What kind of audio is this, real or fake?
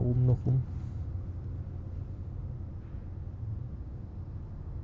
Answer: real